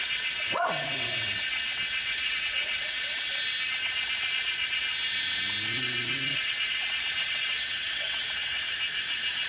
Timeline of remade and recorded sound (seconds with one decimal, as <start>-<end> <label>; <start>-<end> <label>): 0.0-3.4 remade; 3.4-6.3 recorded; 6.3-8.7 remade; 8.7-9.5 recorded